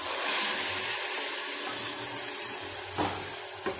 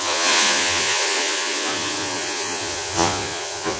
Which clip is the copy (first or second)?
second